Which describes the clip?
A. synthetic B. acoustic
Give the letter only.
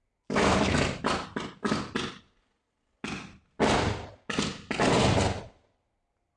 B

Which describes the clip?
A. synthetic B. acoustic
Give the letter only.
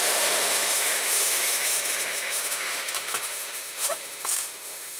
A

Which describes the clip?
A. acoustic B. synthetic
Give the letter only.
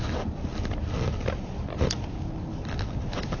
A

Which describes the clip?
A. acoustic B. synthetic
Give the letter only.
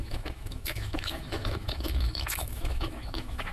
B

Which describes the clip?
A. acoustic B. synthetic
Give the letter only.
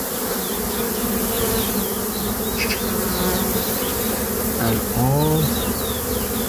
A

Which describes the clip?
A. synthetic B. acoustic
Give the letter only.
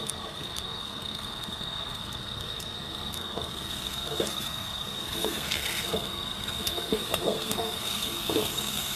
A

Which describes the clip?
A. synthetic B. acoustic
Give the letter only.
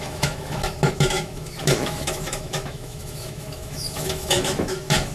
A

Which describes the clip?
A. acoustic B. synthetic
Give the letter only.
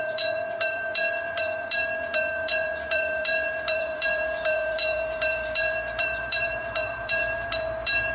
B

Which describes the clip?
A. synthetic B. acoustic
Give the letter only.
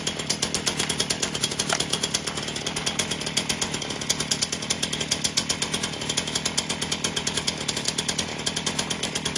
B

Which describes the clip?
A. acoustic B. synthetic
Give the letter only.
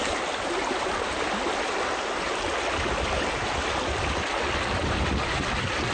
A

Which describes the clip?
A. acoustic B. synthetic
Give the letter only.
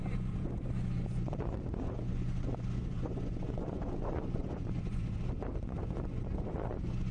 B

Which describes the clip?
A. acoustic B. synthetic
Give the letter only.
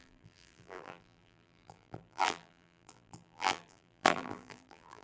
B